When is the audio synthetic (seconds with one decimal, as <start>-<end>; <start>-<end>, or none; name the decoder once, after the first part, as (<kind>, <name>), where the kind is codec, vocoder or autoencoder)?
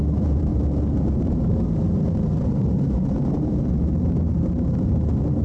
0.0-5.4 (vocoder, BigVGAN v2)